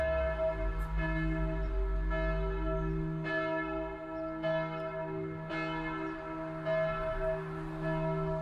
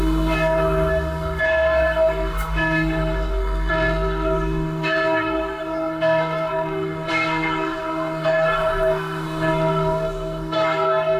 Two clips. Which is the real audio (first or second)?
first